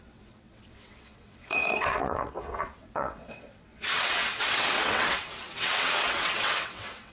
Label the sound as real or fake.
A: fake